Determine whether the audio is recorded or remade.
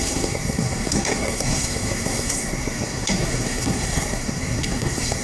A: remade